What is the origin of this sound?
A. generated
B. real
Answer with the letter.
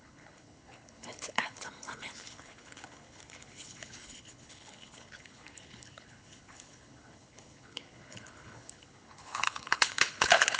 A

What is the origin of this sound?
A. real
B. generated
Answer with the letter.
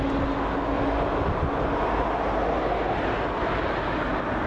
A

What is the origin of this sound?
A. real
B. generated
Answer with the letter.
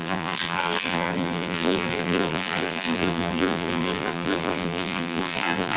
B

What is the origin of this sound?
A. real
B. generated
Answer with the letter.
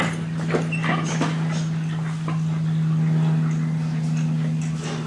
A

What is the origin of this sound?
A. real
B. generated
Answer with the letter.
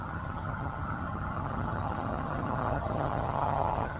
B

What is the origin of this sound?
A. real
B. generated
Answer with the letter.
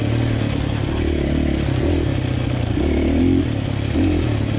A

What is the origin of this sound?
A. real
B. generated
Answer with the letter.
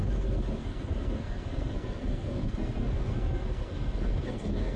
B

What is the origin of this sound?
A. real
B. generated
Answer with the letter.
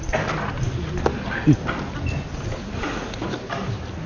A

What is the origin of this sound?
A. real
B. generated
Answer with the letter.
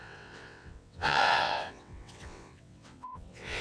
B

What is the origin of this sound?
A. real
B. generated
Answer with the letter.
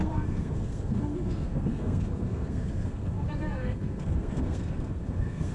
B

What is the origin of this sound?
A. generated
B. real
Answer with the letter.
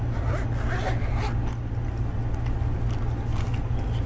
B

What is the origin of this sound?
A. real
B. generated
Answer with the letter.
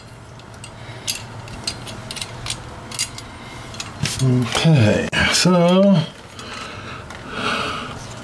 A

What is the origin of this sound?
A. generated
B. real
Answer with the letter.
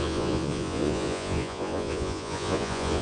A